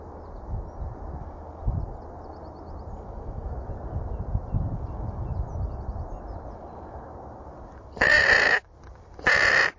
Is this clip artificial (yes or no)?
no